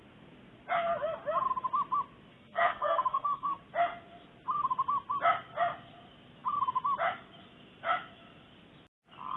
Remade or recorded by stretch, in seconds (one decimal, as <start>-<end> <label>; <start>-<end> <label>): 0.0-2.3 recorded; 2.3-3.6 remade; 3.6-9.4 recorded